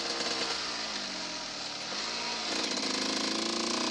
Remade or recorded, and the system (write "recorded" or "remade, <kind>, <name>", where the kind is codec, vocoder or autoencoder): recorded